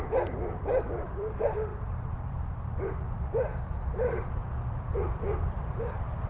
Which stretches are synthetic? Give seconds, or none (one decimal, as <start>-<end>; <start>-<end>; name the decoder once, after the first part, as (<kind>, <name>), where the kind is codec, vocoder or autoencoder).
0.0-4.4 (vocoder, BigVGAN v2)